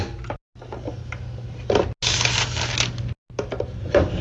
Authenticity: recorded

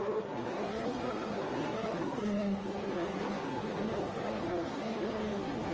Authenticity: remade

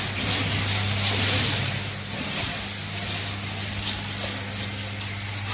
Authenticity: recorded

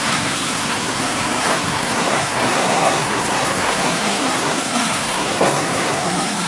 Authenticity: remade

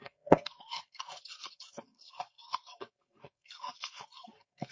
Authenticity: remade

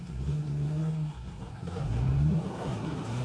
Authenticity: remade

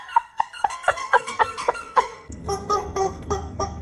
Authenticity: remade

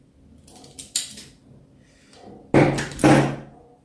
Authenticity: recorded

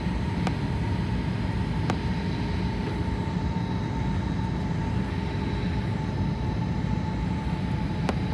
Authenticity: recorded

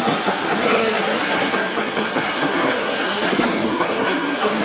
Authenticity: remade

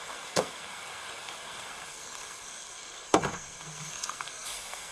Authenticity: remade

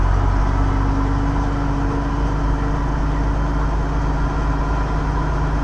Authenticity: recorded